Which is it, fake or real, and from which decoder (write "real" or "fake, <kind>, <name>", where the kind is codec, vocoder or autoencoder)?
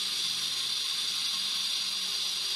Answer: real